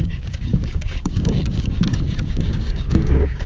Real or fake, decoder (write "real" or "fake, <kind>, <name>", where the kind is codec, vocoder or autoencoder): fake, codec, DAC